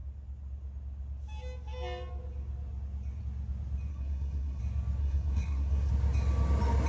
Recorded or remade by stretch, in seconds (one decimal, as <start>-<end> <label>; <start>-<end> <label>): 0.0-3.9 recorded; 3.9-4.6 remade; 4.6-5.0 recorded; 5.0-5.9 remade; 5.9-6.9 recorded